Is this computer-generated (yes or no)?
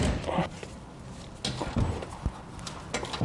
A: no